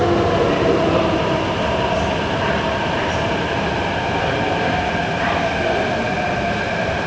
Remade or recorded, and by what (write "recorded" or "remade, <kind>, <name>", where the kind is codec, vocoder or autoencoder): recorded